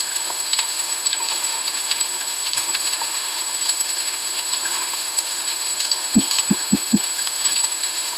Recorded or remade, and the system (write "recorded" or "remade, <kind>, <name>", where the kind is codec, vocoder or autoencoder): remade, autoencoder, DAC-VAE